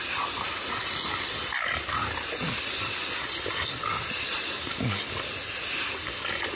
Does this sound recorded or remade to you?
recorded